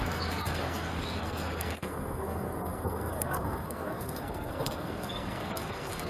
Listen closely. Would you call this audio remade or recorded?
remade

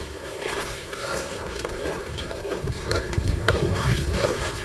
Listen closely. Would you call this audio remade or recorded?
remade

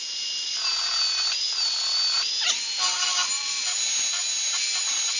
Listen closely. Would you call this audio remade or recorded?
recorded